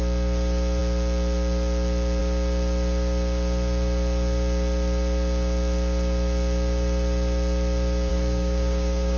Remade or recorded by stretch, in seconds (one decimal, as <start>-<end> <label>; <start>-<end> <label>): 0.0-8.1 recorded; 8.1-9.2 remade